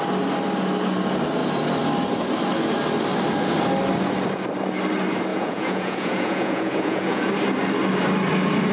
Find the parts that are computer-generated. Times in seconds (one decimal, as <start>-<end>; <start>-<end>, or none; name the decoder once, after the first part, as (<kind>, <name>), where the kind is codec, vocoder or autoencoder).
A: 5.3-7.3 (vocoder, Vocos)